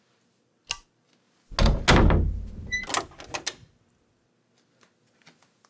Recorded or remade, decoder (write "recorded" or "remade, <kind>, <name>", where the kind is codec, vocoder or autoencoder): recorded